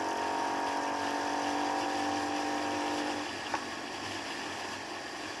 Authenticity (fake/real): real